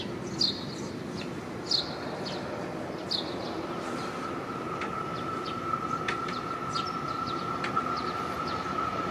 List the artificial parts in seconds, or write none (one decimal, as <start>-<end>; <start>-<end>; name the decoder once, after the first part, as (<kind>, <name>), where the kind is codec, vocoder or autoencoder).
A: none